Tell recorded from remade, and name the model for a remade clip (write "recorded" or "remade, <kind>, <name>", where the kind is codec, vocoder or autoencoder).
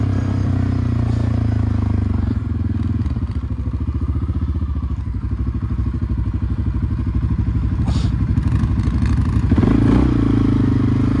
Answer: recorded